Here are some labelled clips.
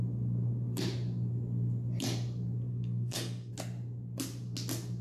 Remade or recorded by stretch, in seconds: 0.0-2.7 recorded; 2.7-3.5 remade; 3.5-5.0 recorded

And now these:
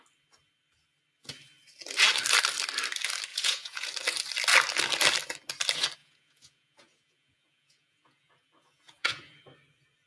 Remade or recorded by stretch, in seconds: 0.0-3.3 recorded; 3.3-3.9 remade; 3.9-6.0 recorded; 6.0-9.4 remade; 9.4-10.1 recorded

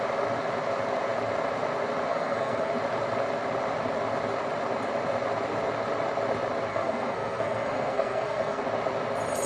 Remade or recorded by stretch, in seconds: 0.0-2.1 recorded; 2.1-2.7 remade; 2.7-6.7 recorded; 6.7-8.6 remade; 8.6-9.5 recorded

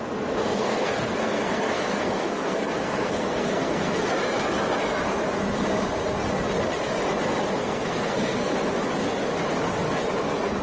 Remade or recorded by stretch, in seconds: 0.0-0.4 recorded; 0.4-4.1 remade; 4.1-7.6 recorded; 7.6-8.5 remade; 8.5-10.6 recorded

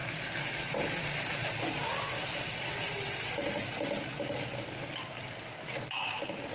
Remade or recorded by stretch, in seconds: 0.0-1.9 recorded; 1.9-4.7 remade; 4.7-6.5 recorded